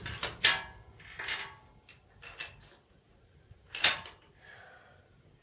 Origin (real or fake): real